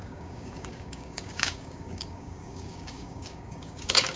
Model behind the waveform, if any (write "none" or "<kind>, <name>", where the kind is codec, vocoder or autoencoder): codec, DAC